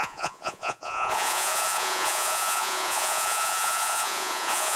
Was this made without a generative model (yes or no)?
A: no